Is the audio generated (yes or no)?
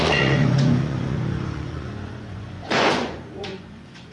yes